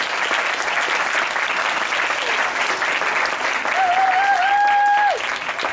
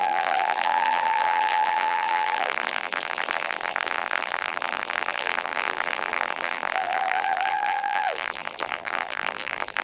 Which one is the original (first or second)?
first